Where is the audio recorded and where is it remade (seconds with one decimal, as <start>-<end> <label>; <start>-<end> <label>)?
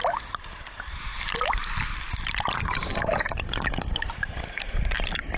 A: 0.0-1.1 recorded; 1.1-4.3 remade; 4.3-5.4 recorded